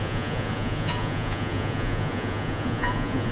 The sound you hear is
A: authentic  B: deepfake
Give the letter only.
B